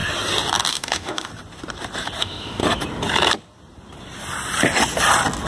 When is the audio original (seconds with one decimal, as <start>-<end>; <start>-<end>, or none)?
0.0-0.7; 1.3-2.2; 2.6-5.5